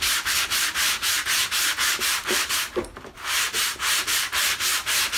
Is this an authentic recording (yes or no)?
no